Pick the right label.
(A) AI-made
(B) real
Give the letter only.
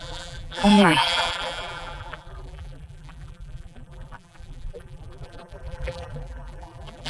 A